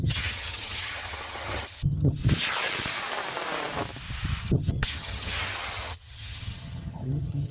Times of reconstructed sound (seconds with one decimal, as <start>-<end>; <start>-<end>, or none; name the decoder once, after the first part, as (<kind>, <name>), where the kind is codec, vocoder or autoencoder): 0.0-2.2 (vocoder, HiFi-GAN); 4.4-7.5

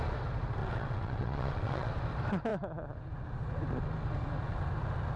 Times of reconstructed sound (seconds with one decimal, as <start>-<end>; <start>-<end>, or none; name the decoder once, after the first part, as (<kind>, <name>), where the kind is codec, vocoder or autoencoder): 0.6-1.9 (vocoder, WaveNeXt)

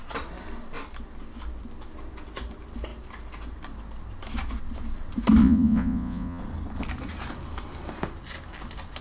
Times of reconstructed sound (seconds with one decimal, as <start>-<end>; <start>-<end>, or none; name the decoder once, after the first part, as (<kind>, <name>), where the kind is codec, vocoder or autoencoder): 5.4-6.4 (vocoder, Vocos)

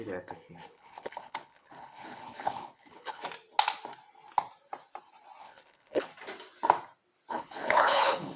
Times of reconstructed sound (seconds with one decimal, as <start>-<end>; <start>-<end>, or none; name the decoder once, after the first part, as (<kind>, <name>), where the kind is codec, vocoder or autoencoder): 0.0-3.2 (codec, HILCodec); 5.4-6.1; 7.3-8.4

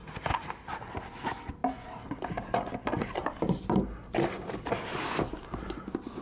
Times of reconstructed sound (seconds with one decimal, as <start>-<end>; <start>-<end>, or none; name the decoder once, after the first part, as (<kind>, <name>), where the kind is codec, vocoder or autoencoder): 0.0-0.8 (autoencoder, DAC-VAE)

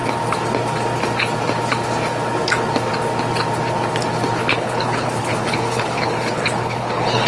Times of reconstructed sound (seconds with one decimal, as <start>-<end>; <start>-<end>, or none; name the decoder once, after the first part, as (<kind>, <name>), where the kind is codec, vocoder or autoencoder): 4.5-7.3 (codec, HILCodec)

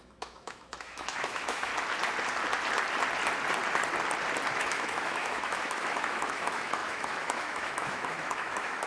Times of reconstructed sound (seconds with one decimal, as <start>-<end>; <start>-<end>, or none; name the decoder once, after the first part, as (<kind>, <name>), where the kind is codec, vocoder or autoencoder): 0.0-1.7 (autoencoder, DAC-VAE); 4.6-8.9

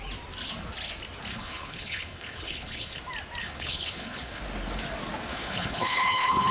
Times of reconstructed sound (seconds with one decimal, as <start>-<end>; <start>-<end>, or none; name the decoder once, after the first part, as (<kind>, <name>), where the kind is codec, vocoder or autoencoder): 1.3-3.0 (codec, HILCodec); 3.4-4.4; 5.3-6.5